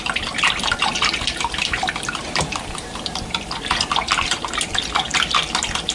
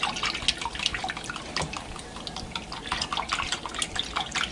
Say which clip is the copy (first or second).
first